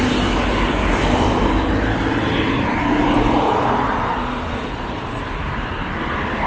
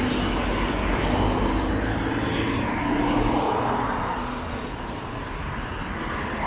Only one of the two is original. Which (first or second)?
second